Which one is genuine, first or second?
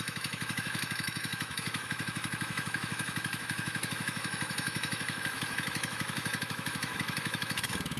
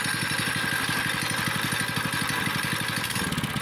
second